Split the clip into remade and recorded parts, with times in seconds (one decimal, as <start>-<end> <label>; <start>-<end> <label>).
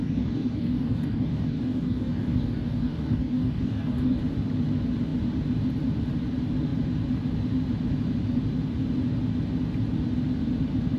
0.0-4.2 remade; 4.2-11.0 recorded